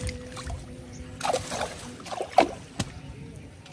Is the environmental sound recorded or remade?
recorded